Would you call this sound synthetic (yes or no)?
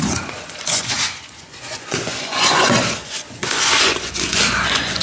yes